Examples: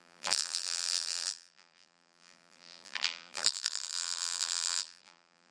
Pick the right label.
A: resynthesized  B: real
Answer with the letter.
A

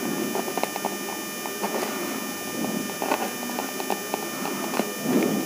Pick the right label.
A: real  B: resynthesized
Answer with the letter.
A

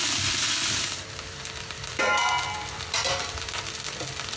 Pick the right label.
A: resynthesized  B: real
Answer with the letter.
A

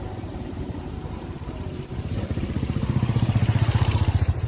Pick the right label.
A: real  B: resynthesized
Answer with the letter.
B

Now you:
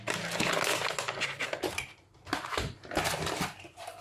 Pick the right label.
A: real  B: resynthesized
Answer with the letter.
A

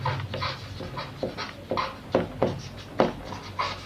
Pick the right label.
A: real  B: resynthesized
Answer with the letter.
A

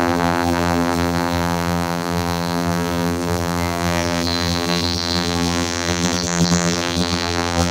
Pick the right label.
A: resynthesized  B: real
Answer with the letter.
A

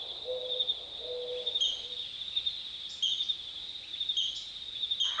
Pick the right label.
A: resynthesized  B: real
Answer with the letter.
B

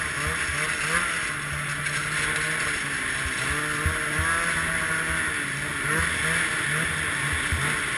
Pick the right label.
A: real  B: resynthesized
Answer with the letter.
A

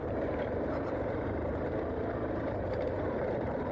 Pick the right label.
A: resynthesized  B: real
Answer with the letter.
A